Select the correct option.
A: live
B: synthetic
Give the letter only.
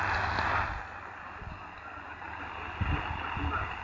A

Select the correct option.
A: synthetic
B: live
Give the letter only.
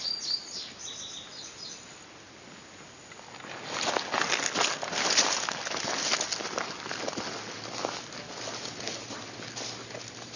B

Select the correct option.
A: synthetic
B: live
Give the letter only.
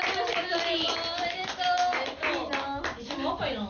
B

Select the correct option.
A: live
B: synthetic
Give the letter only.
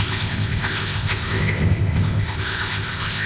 B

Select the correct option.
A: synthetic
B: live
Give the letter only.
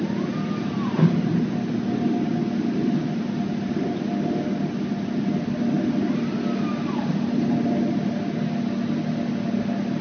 B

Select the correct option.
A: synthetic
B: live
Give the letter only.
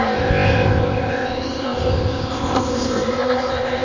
A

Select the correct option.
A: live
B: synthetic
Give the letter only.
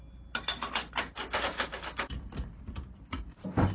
A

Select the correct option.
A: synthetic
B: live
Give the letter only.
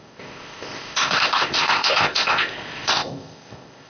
A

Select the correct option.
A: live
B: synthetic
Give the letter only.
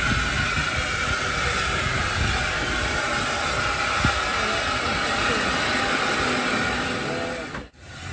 A